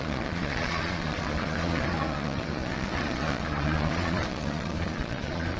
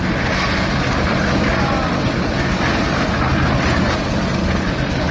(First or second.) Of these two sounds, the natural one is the second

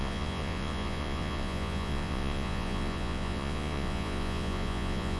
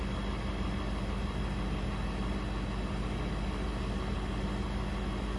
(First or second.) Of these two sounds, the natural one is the second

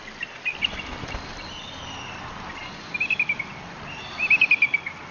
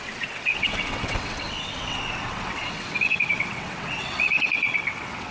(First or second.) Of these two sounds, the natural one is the first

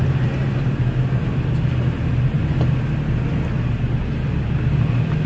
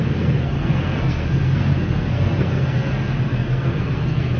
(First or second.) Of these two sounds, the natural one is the first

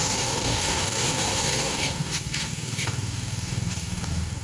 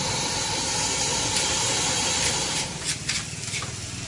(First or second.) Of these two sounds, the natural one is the second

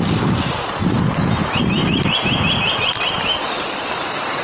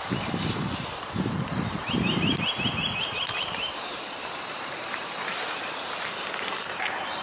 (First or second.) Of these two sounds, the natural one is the first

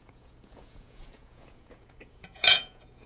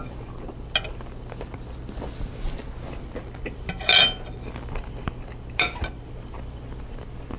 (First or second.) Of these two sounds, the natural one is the second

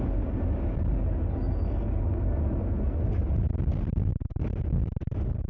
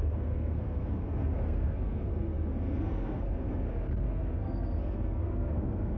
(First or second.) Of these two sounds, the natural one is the first